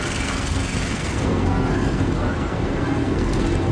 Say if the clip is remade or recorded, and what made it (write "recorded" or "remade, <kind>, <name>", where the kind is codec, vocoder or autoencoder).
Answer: remade, codec, SNAC